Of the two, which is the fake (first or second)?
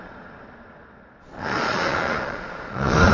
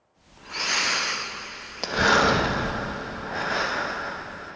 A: first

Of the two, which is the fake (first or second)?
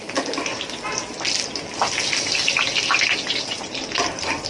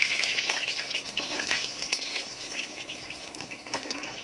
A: second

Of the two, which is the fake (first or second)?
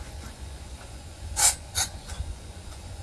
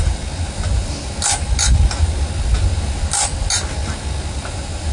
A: first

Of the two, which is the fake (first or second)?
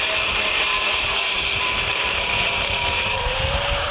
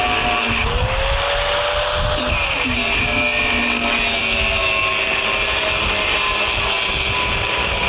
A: first